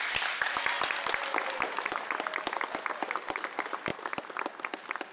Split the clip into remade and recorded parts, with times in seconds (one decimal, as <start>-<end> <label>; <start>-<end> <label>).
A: 0.0-5.1 recorded